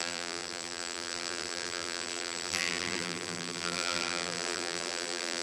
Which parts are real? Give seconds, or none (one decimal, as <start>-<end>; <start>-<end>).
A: none